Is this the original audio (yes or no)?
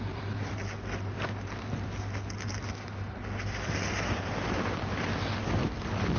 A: no